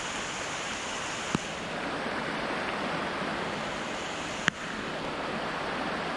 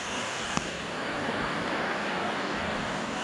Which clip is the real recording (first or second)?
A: first